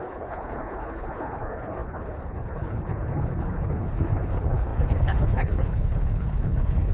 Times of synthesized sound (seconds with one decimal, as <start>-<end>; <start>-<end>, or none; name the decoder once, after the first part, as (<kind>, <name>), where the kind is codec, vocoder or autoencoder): 0.0-6.9 (codec, HILCodec)